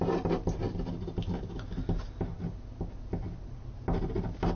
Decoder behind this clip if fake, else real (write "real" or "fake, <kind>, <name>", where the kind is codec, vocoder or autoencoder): real